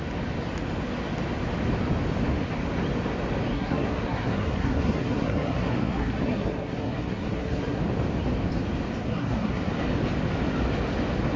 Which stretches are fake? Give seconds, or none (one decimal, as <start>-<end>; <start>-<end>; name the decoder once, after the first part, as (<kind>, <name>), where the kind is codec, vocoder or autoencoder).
3.5-7.8 (codec, SNAC); 9.0-9.7